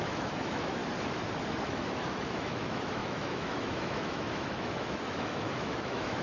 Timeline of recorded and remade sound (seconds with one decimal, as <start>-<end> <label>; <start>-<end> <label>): 0.0-0.8 remade; 0.8-1.6 recorded; 1.6-6.2 remade